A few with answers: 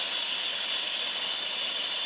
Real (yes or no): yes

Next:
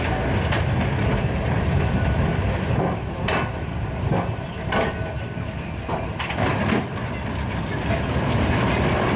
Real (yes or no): yes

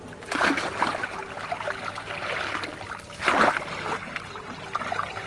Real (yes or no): yes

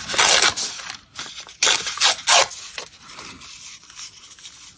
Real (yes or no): yes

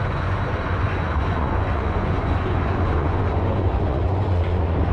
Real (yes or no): no